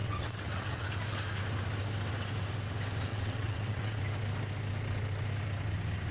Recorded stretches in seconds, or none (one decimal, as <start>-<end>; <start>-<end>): 0.8-3.1; 4.0-6.1